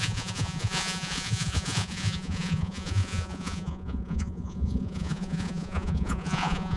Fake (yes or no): yes